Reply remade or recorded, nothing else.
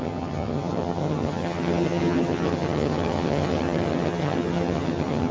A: remade